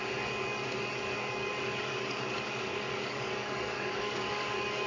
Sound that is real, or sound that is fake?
fake